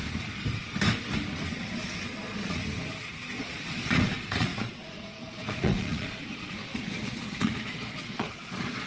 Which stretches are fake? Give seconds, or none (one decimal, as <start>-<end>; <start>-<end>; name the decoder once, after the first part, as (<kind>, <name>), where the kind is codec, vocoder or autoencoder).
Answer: 1.5-2.6 (vocoder, Vocos); 3.4-8.9

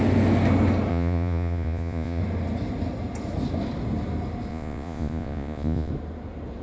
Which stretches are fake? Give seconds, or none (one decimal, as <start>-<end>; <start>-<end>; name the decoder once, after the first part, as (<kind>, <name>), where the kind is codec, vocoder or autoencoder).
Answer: 0.9-2.2 (vocoder, Vocos); 4.5-5.9